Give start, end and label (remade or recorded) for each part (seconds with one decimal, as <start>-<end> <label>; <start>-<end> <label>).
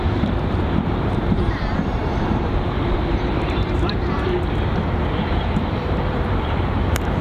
0.0-7.2 remade